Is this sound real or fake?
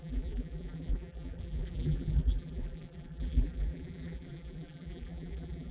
fake